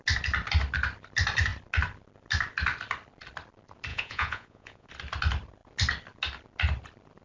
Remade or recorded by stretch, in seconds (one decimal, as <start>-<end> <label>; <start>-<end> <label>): 0.0-3.9 recorded; 3.9-4.9 remade; 4.9-7.2 recorded